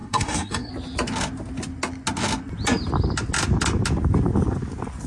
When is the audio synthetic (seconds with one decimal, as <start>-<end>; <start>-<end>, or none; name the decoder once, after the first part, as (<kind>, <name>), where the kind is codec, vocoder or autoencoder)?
0.0-0.7 (codec, SNAC)